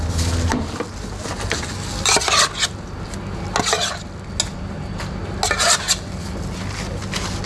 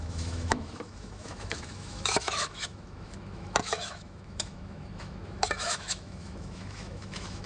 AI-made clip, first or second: second